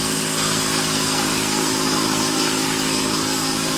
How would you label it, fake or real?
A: fake